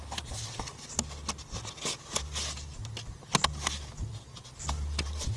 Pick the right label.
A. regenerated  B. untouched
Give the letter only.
B